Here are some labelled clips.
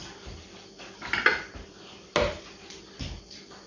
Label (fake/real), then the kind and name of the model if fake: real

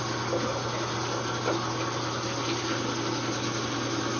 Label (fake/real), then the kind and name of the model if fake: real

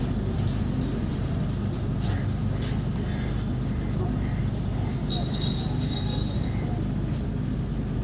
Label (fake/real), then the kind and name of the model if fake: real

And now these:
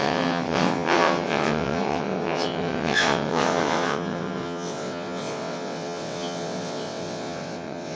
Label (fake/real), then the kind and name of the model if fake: fake, vocoder, WaveNeXt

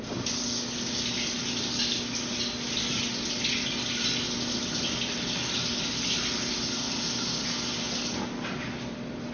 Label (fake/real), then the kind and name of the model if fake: real